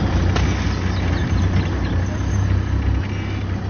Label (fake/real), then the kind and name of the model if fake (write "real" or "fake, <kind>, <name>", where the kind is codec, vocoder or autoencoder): real